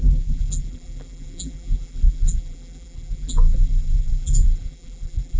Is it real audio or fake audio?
fake